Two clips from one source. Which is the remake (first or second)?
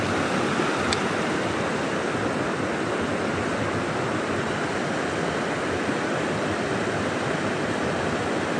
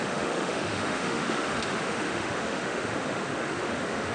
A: second